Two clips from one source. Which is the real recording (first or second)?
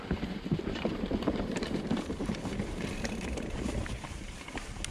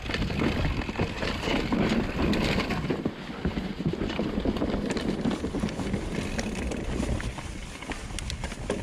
second